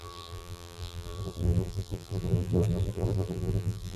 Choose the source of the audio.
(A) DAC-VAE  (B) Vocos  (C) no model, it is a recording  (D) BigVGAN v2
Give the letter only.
D